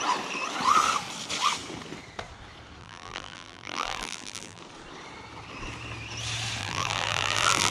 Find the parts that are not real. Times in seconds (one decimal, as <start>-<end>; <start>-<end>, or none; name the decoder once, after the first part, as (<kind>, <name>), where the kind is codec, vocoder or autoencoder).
2.8-4.6 (vocoder, BigVGAN v2); 6.6-7.7

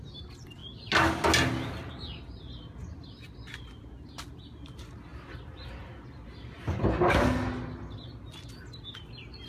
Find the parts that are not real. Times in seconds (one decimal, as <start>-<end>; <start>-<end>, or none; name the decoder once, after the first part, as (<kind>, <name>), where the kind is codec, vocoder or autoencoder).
none

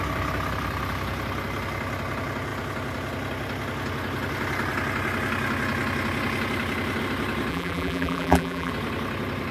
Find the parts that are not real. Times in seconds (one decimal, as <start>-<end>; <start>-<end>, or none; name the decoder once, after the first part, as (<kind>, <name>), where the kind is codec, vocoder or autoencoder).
7.5-8.7 (vocoder, BigVGAN v2)

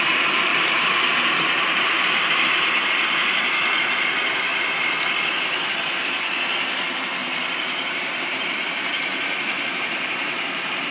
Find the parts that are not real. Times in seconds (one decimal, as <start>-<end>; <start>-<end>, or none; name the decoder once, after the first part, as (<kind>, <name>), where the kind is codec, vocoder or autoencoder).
0.5-1.2 (vocoder, BigVGAN v2); 4.5-5.0; 7.2-10.9

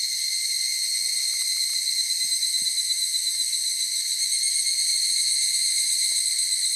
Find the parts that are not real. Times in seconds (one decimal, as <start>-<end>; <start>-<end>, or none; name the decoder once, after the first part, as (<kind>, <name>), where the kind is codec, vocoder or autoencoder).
1.7-4.0 (vocoder, BigVGAN v2); 4.9-6.2

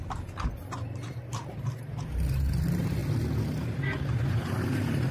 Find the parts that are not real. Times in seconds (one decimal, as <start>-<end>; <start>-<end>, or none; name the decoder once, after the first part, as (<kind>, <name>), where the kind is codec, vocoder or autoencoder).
0.0-3.0 (vocoder, BigVGAN v2); 4.3-5.1

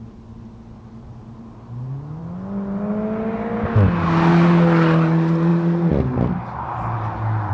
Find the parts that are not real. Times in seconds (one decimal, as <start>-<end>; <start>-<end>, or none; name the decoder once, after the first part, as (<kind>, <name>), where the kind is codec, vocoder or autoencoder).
none